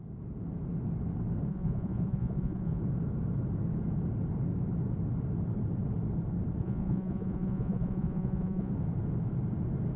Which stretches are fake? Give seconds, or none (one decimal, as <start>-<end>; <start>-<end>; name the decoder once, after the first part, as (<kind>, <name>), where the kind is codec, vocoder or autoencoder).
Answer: 1.5-2.8 (vocoder, Vocos); 6.6-8.7